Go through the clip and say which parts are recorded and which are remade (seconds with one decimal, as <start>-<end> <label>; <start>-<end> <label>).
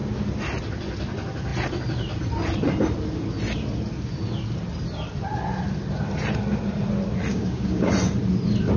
0.0-7.3 recorded; 7.3-7.9 remade; 7.9-8.8 recorded